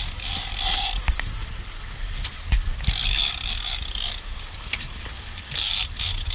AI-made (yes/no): no